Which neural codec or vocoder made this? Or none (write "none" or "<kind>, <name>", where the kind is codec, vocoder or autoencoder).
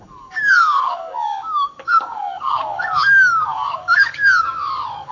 codec, DAC